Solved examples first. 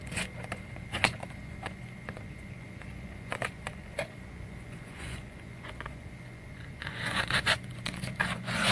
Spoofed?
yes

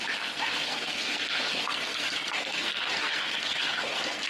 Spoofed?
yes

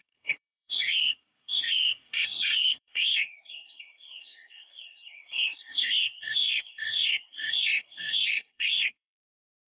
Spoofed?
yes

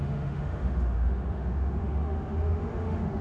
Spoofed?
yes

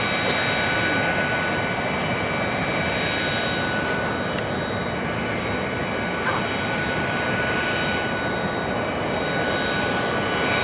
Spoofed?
no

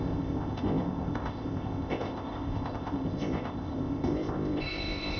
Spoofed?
yes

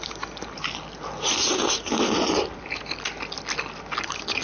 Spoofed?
no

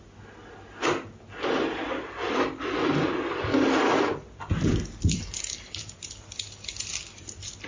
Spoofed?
no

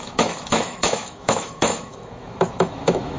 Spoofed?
yes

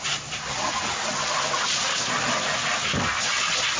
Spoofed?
no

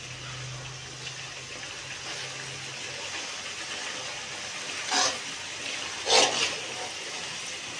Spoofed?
no